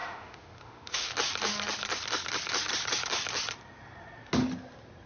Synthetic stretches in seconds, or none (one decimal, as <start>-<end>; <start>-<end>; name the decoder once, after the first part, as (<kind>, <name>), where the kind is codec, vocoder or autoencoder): 0.0-1.1 (autoencoder, DAC-VAE)

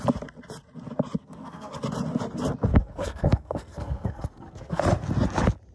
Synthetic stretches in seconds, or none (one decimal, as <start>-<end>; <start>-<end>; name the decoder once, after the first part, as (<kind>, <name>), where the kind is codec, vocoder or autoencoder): 1.2-1.7 (codec, SNAC); 2.7-4.8

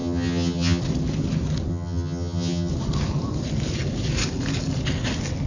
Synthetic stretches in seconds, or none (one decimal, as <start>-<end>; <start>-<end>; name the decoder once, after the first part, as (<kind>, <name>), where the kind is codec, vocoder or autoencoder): 0.0-0.8 (vocoder, HiFi-GAN); 1.7-2.7

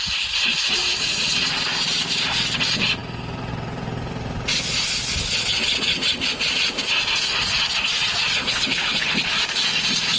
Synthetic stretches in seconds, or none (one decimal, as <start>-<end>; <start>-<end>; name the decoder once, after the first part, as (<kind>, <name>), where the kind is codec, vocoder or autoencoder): 8.4-9.3 (codec, HILCodec)

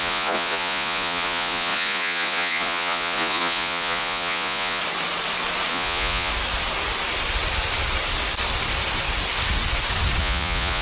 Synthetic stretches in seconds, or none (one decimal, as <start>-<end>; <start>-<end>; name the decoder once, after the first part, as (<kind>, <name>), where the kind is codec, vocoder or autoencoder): 0.0-4.8 (vocoder, Vocos); 5.7-6.3; 10.2-10.8

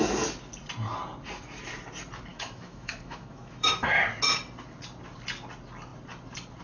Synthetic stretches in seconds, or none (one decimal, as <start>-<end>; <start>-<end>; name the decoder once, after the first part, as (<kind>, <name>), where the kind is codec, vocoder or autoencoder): 2.3-3.9 (autoencoder, DAC-VAE)